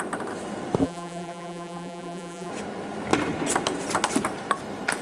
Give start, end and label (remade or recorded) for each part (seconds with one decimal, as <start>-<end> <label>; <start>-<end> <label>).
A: 0.0-0.8 recorded; 0.8-2.5 remade; 2.5-5.0 recorded